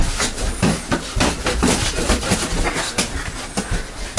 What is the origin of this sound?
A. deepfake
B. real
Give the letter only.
B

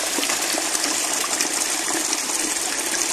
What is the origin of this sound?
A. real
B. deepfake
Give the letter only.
A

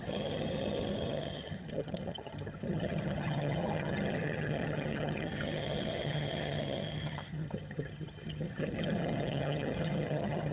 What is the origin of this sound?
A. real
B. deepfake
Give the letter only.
B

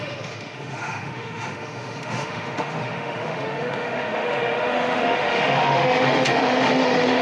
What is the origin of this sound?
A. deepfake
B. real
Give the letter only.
A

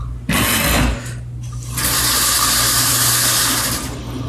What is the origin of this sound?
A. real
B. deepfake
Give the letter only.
A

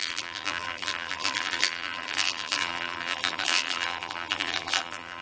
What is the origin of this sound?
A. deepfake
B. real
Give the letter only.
A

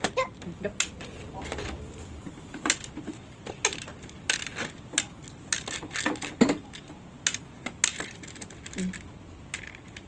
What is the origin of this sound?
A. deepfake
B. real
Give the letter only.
B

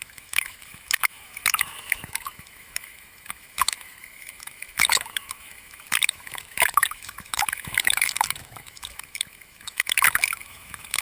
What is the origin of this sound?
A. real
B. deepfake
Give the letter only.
B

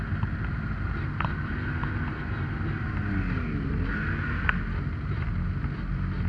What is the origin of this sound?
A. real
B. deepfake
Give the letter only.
A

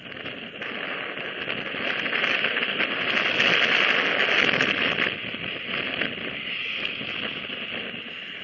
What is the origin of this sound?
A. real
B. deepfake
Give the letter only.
A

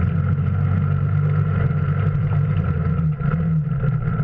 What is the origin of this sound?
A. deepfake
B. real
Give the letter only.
B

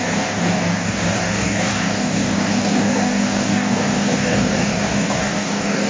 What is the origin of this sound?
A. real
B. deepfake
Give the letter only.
B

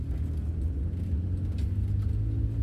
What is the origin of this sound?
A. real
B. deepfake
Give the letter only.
A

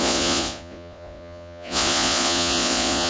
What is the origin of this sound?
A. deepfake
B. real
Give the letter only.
A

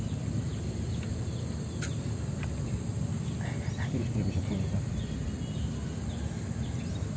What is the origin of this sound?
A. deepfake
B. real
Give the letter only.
B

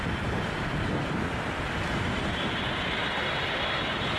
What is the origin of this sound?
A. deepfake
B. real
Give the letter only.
A